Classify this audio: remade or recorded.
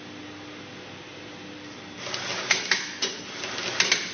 recorded